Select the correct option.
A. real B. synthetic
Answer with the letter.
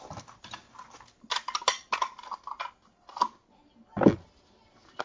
A